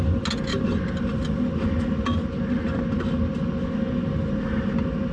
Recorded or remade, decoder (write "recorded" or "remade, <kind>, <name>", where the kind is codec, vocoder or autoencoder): recorded